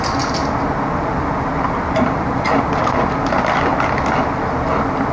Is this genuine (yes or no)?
yes